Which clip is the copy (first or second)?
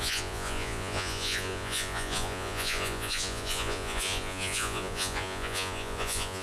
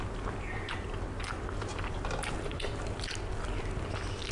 first